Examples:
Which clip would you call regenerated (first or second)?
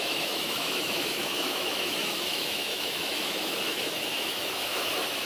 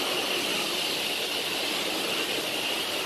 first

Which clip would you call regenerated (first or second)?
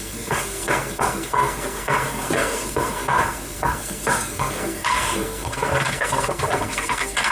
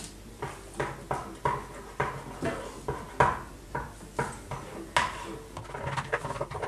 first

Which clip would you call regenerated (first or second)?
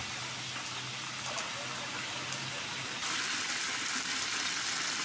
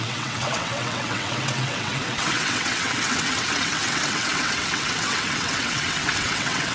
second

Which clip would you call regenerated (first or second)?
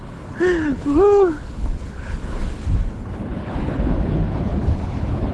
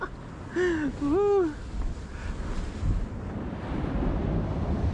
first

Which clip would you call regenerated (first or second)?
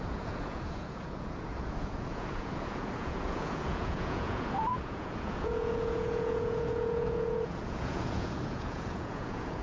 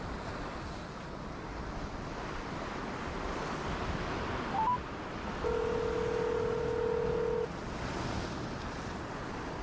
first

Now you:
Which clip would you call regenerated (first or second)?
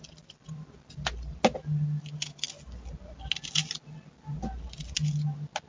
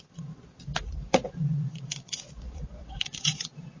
second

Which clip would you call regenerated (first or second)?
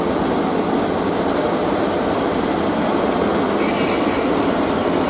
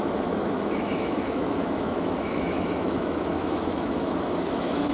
second